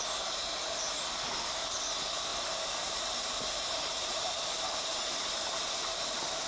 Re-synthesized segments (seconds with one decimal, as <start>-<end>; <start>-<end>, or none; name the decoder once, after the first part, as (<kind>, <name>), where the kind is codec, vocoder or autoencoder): 2.3-6.5 (vocoder, BigVGAN v2)